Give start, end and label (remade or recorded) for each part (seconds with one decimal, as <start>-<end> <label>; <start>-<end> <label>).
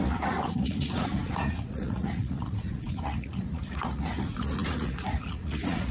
0.0-5.9 remade